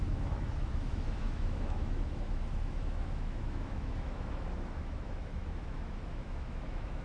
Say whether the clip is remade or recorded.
remade